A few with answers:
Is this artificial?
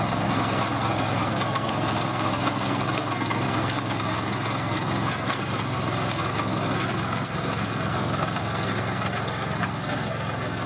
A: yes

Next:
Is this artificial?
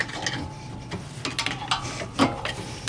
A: no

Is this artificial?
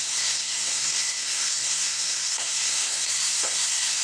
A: yes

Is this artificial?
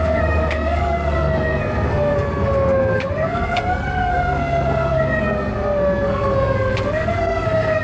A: yes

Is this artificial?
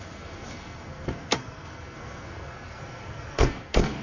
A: yes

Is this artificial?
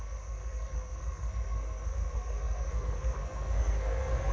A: yes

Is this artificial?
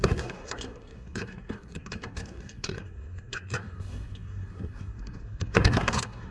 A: yes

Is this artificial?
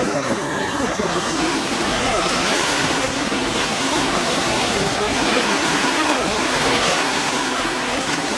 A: yes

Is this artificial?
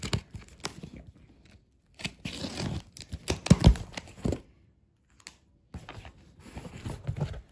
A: no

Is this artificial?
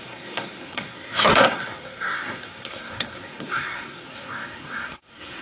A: yes